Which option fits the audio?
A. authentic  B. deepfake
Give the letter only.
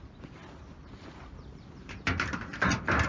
A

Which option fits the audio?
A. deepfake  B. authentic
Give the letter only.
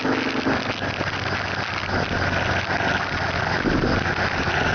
B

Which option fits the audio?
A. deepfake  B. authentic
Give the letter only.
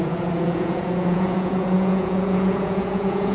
A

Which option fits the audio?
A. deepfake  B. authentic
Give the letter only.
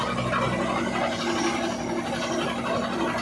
B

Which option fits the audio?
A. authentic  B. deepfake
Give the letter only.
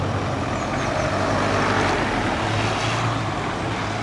A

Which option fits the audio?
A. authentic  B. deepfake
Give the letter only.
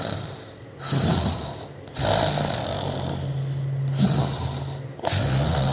A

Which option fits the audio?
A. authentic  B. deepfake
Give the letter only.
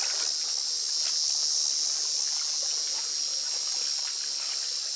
A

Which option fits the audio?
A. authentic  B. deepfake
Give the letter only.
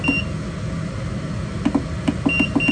A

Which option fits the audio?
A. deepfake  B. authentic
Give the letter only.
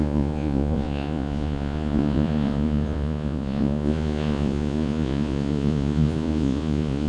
A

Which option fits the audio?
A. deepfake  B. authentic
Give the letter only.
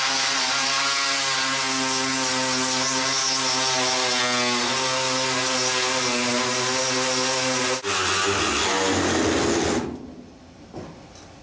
B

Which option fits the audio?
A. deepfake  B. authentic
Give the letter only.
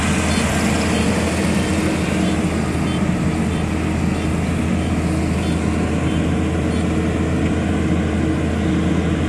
B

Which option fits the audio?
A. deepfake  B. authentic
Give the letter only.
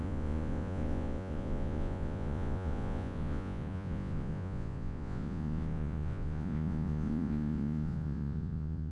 A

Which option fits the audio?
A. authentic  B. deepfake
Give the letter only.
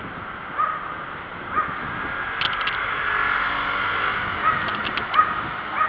A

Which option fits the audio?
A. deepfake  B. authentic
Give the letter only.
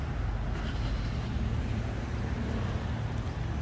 B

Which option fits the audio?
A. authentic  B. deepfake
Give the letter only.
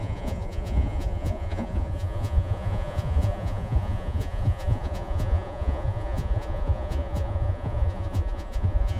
B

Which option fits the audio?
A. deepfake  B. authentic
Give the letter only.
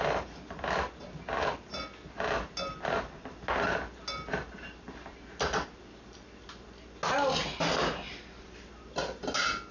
B